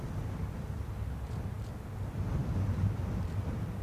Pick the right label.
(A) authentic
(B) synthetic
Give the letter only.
A